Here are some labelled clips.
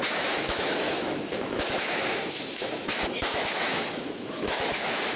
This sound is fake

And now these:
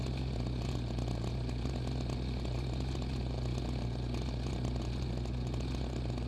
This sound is real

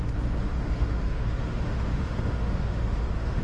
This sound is fake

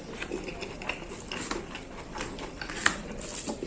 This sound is real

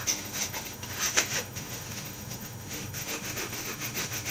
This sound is fake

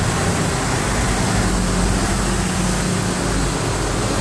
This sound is real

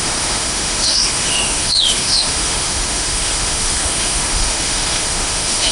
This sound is fake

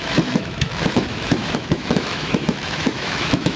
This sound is fake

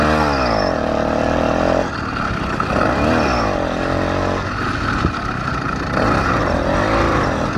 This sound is real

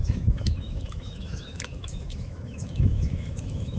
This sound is fake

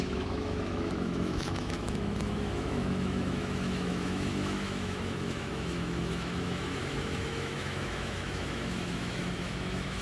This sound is fake